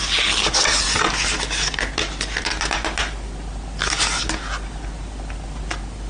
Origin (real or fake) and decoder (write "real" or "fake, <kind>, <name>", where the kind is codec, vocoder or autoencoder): real